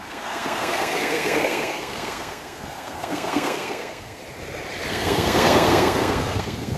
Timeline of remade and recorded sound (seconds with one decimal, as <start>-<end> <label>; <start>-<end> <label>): 0.0-4.2 remade; 4.2-4.9 recorded; 4.9-6.8 remade